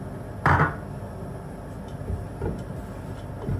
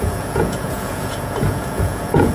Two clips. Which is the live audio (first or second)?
first